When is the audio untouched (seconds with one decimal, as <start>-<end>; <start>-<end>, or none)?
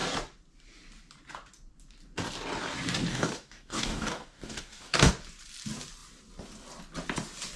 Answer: 0.0-3.1; 5.1-7.6